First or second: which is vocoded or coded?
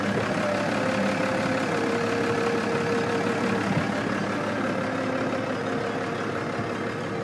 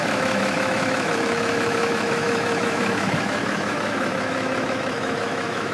second